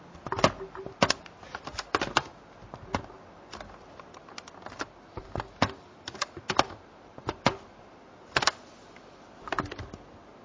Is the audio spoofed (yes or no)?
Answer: no